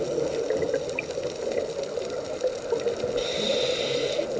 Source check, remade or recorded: recorded